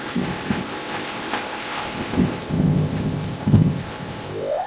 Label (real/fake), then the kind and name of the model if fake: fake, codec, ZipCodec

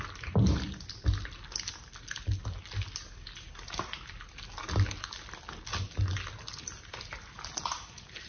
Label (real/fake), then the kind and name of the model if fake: real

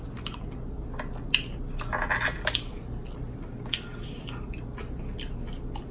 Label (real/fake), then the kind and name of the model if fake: real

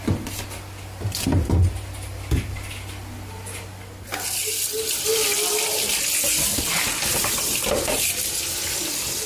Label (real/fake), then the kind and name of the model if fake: real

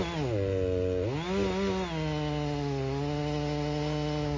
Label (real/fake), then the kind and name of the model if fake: real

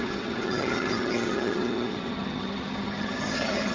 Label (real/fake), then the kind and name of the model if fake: fake, vocoder, HiFi-GAN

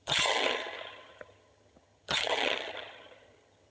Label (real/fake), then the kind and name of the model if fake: fake, vocoder, HiFi-GAN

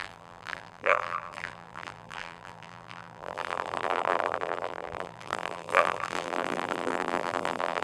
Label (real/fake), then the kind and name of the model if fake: fake, vocoder, BigVGAN v2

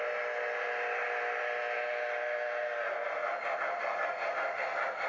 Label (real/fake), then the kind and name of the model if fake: real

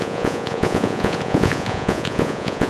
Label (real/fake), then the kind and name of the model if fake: fake, vocoder, Vocos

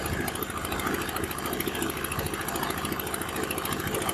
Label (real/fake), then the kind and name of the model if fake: real